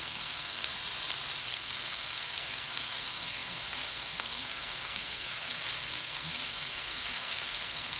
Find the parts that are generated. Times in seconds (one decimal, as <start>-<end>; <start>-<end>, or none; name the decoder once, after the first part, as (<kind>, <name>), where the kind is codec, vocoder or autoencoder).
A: 0.0-0.7 (codec, SNAC); 1.4-8.0